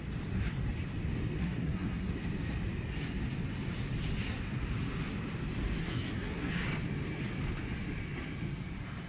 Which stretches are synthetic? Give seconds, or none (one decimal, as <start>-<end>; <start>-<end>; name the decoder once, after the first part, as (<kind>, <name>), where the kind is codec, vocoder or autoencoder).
1.4-2.1 (codec, SNAC); 5.8-6.5